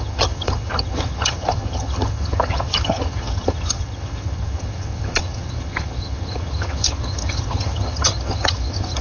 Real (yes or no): no